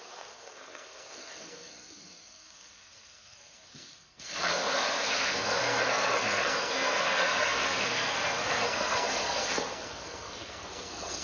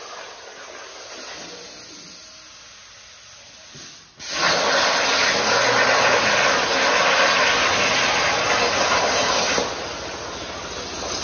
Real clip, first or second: second